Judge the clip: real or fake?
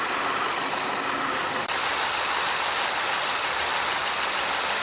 real